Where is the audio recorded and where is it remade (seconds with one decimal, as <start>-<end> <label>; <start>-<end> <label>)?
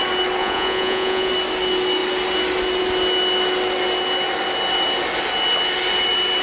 0.0-0.4 recorded; 0.4-1.3 remade; 1.3-6.4 recorded